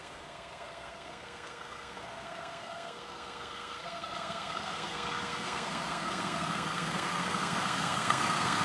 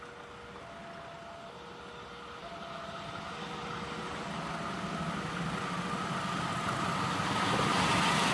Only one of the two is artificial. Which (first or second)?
first